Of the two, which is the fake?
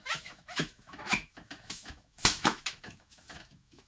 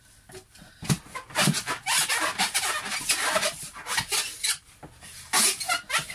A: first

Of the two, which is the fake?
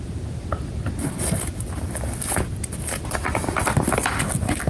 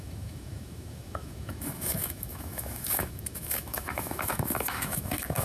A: second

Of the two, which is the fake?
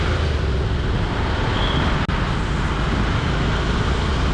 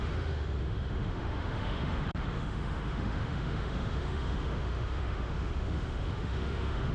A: second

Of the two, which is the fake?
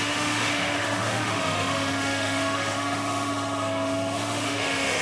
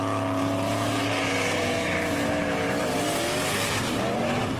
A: first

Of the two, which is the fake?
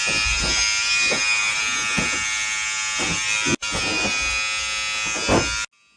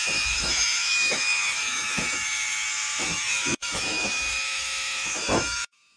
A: second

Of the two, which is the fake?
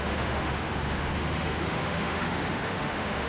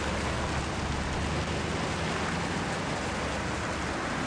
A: first